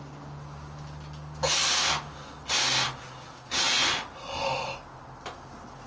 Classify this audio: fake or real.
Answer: real